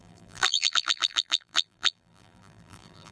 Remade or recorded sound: remade